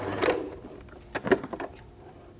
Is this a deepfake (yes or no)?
no